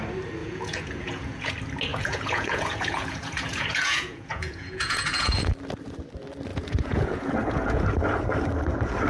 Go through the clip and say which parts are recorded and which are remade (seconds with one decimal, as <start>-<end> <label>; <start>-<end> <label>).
0.0-0.4 recorded; 0.4-1.5 remade; 1.5-1.9 recorded; 1.9-5.5 remade; 5.5-6.5 recorded; 6.5-7.8 remade; 7.8-9.1 recorded